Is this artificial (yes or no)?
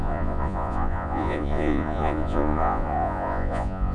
yes